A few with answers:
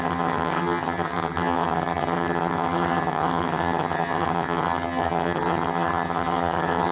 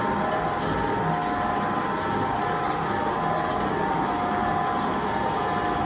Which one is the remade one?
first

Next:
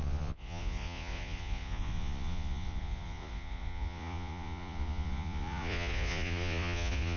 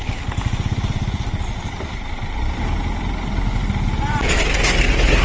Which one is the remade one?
first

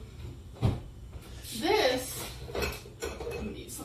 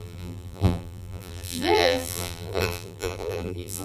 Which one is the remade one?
second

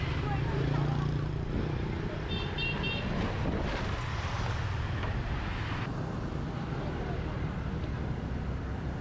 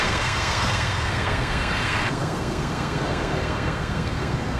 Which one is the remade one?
second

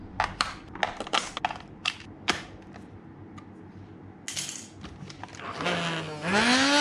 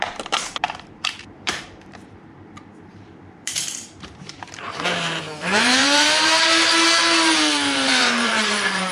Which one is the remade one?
second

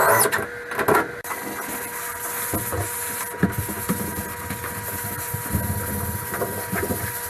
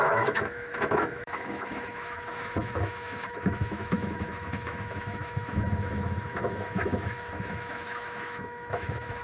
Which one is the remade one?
second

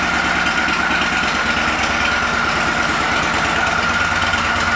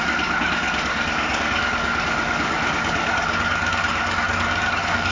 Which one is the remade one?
second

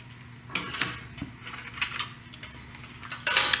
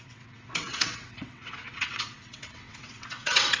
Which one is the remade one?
second